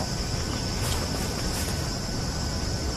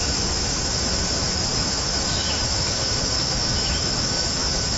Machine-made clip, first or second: second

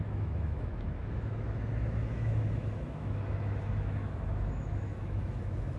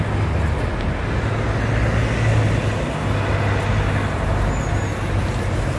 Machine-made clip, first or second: first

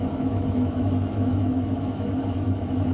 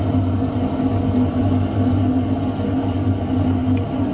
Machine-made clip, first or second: first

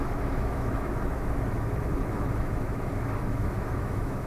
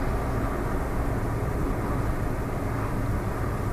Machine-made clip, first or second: first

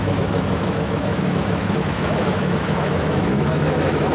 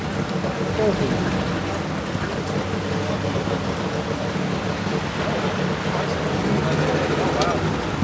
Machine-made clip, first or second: first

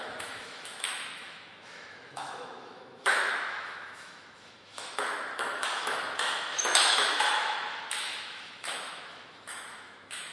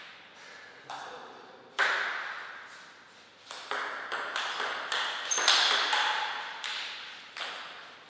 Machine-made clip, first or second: first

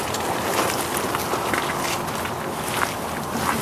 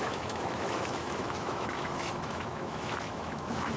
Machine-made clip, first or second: second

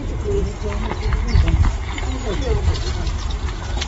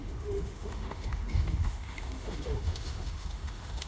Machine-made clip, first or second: second